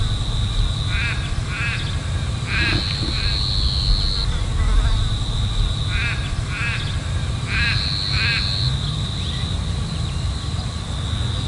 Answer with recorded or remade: recorded